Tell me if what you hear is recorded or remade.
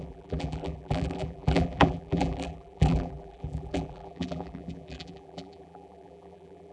remade